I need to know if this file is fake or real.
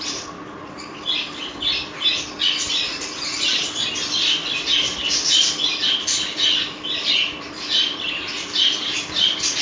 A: real